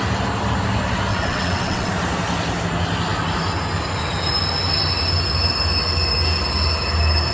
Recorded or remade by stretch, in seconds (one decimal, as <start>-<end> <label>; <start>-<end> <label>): 0.0-1.1 recorded; 1.1-1.9 remade; 1.9-7.3 recorded